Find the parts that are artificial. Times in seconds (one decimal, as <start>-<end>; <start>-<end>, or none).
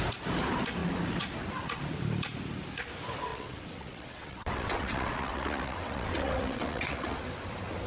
3.3-7.2